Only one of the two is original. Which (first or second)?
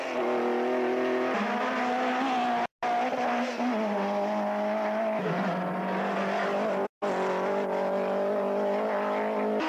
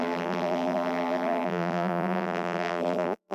first